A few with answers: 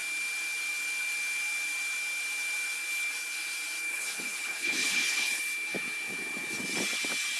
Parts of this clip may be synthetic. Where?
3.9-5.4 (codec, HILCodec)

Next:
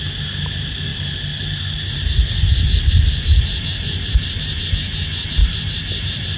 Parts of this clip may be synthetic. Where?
0.9-4.7 (vocoder, BigVGAN v2); 5.4-6.4

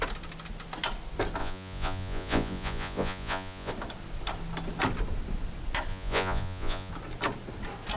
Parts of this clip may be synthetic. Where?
1.4-3.7 (vocoder, Vocos); 5.9-6.9

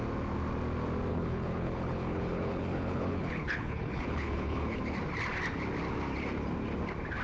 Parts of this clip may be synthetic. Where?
1.1-4.8 (codec, HILCodec)

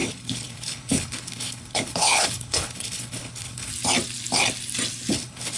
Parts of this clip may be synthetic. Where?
0.0-3.7 (codec, HILCodec); 5.1-5.6